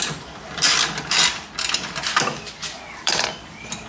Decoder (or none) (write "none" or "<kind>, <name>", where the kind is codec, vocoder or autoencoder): vocoder, BigVGAN v2